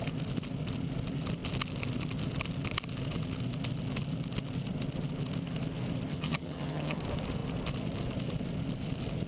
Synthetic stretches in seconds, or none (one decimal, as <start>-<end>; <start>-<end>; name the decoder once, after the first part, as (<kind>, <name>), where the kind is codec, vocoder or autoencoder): 6.1-7.0 (vocoder, HiFi-GAN)